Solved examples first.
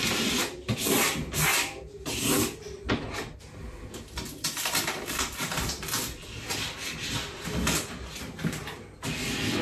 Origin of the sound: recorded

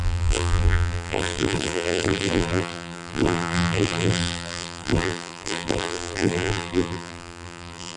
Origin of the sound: remade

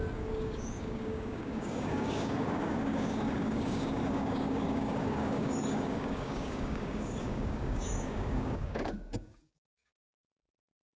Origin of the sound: remade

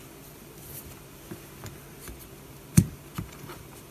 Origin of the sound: remade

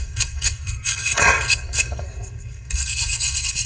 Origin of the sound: remade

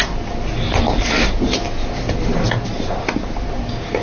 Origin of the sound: recorded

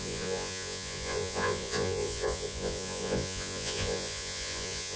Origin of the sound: remade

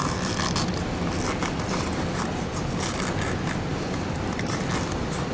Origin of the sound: recorded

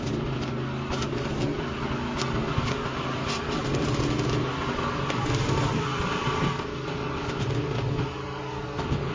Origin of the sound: recorded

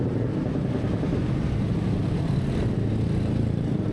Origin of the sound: recorded